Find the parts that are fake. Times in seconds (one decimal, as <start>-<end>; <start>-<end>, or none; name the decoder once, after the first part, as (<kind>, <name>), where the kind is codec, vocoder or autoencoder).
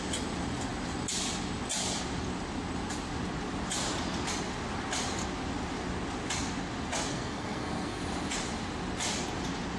7.1-8.0 (codec, SNAC)